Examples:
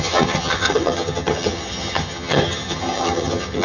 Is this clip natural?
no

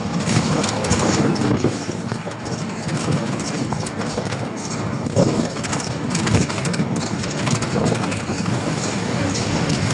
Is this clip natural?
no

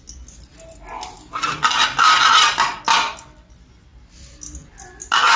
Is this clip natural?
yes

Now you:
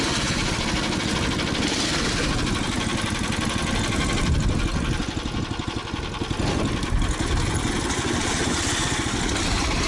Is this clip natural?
yes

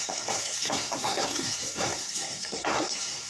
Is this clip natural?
no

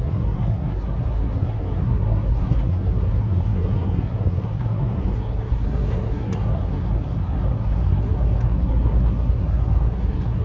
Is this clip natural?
no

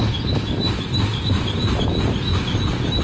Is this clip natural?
yes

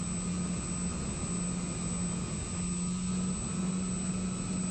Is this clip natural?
yes